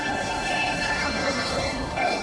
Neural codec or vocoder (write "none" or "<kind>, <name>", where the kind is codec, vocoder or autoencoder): codec, SNAC